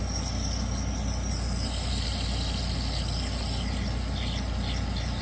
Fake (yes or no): no